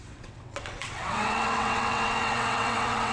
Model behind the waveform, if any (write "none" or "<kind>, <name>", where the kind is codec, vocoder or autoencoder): vocoder, WaveNeXt